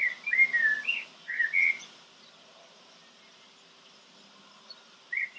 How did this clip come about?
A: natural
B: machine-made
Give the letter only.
A